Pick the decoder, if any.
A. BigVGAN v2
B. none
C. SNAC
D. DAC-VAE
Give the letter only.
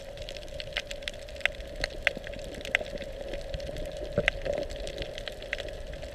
B